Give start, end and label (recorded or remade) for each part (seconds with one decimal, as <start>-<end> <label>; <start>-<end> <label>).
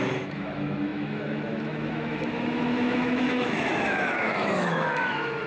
0.0-5.5 remade